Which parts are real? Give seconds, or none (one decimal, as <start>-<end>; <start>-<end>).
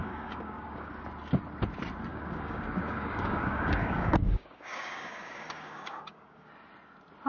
0.9-2.1; 6.5-7.3